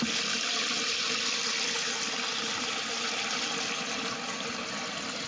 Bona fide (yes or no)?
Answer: yes